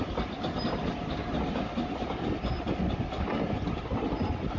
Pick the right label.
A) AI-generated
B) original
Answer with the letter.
B